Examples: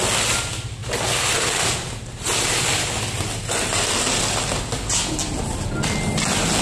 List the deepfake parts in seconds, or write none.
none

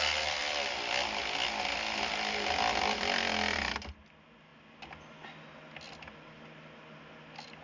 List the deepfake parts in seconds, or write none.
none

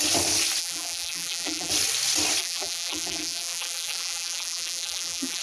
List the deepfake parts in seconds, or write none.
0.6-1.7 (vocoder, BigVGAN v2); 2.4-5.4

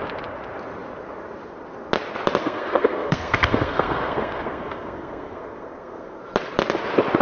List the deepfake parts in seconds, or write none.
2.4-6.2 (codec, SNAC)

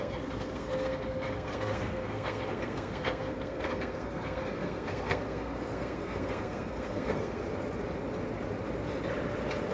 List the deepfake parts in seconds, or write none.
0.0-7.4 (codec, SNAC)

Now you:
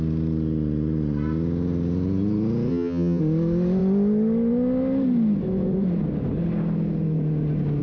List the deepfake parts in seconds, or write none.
2.7-3.2 (vocoder, HiFi-GAN)

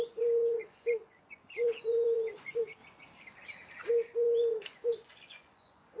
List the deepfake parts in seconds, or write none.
0.0-2.8 (vocoder, Vocos); 3.9-6.0